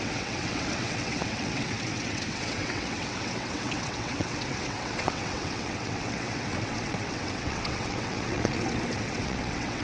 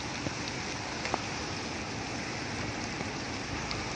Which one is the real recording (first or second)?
second